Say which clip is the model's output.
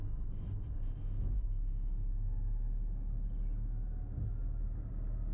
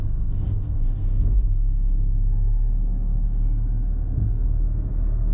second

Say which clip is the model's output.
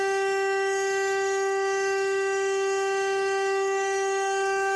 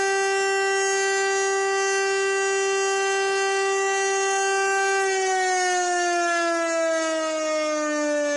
first